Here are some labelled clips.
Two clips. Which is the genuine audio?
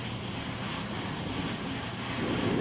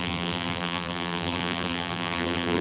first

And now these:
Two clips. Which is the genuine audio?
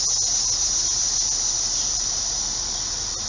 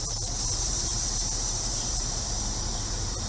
first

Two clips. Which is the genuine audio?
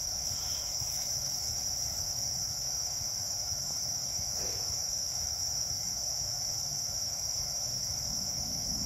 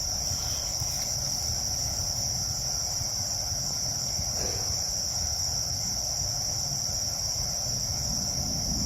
second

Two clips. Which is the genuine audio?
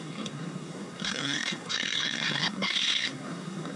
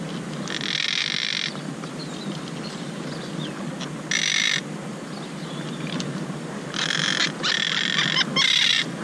second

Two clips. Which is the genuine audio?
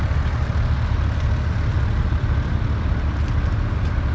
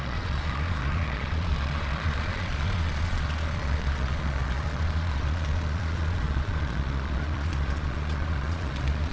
first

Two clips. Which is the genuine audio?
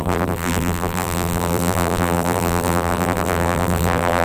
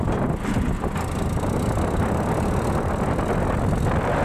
second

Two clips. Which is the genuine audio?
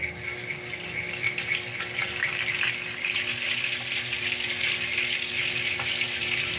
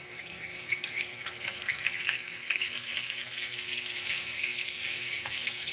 first